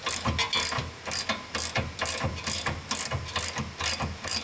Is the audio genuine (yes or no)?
yes